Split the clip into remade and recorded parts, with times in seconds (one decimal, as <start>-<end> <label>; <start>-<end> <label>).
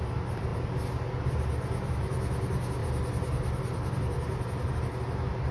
0.0-5.5 recorded